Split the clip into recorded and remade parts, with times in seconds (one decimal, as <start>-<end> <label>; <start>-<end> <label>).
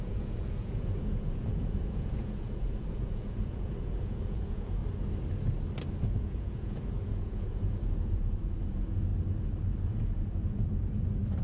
0.0-4.8 remade; 4.8-6.0 recorded; 6.0-9.1 remade; 9.1-9.8 recorded; 9.8-11.4 remade